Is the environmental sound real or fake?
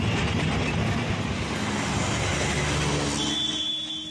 real